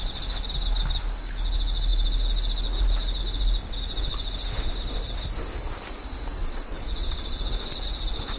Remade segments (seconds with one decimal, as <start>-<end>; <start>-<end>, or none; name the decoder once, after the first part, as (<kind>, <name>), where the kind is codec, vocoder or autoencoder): 6.4-7.4 (vocoder, Vocos)

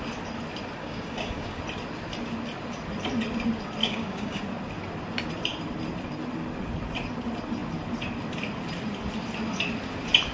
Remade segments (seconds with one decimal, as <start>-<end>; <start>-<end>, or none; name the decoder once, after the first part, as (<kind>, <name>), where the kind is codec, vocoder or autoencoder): 0.8-1.6 (codec, DAC); 3.8-4.4

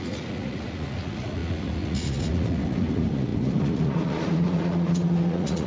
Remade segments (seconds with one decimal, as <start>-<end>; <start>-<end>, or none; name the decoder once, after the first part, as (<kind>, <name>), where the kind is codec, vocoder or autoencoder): 0.0-5.7 (vocoder, Vocos)